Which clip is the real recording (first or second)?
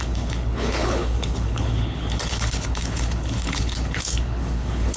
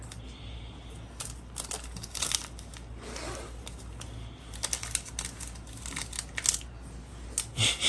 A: second